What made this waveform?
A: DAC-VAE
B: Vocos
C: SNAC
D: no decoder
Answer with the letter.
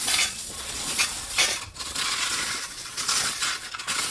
B